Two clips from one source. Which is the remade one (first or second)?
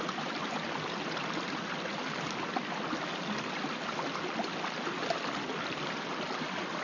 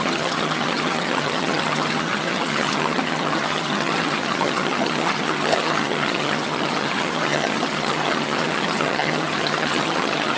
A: second